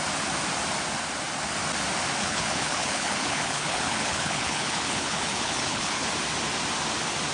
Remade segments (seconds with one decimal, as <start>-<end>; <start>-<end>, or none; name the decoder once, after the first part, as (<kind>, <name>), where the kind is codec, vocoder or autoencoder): 2.2-6.1 (codec, HILCodec)